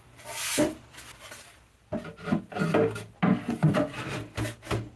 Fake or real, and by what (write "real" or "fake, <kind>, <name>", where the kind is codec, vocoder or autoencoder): real